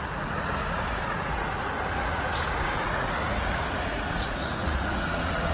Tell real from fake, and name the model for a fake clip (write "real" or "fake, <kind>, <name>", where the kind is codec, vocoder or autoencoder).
fake, vocoder, Vocos